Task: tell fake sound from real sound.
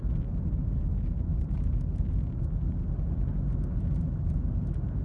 real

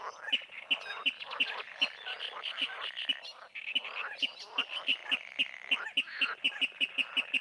real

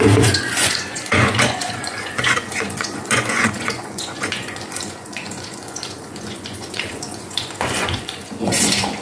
fake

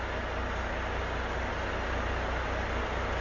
real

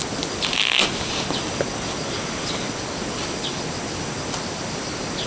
real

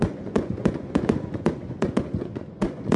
fake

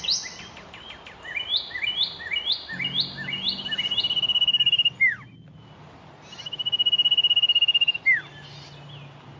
real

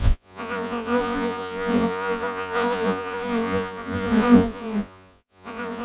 fake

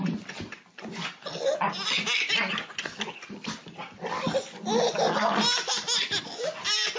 real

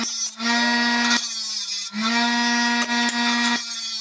real